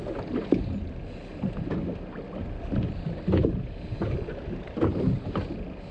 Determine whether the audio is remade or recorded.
recorded